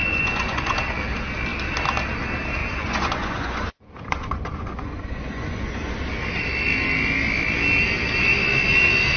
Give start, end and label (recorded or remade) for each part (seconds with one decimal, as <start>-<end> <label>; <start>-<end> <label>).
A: 0.0-0.8 remade; 0.8-2.6 recorded; 2.6-5.9 remade; 5.9-9.2 recorded